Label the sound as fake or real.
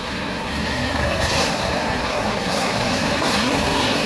fake